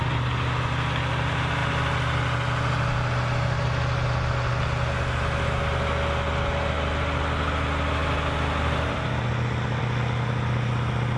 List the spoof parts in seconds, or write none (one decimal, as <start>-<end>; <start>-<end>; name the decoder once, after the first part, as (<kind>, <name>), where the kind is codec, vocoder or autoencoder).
none